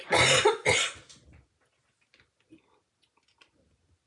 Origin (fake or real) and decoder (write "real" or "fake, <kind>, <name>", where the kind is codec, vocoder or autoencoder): real